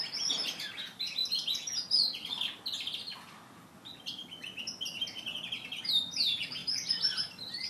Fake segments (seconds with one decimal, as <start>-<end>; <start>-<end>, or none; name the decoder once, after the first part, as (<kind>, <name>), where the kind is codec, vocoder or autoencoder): 0.0-1.2 (vocoder, BigVGAN v2); 5.8-7.7